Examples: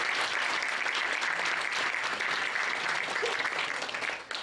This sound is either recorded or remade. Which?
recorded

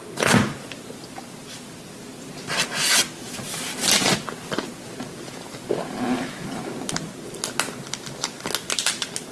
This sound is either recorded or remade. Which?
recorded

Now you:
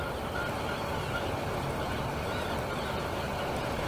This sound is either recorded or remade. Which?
recorded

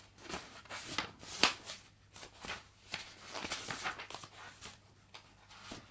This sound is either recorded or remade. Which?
recorded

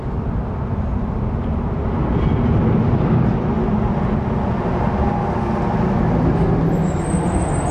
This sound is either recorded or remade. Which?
recorded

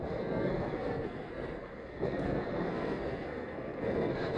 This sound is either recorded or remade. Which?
remade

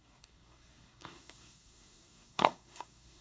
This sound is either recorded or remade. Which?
remade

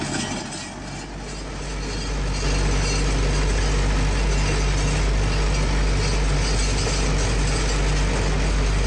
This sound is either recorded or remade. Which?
recorded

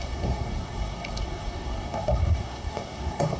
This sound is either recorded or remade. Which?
remade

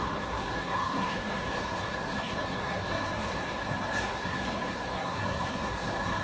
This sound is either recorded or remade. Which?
remade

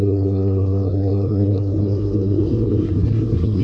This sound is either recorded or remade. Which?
remade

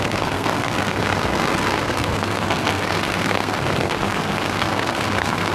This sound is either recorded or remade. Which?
remade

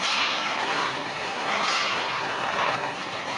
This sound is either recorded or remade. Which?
remade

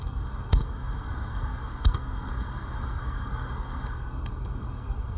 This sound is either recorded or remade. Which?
remade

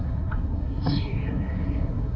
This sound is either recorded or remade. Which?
remade